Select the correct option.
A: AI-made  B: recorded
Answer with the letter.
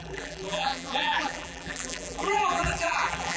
A